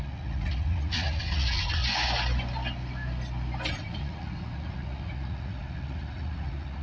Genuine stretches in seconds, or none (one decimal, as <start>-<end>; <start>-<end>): 1.8-3.7